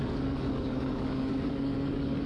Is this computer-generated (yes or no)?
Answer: yes